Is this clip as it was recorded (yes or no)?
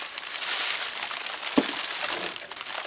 no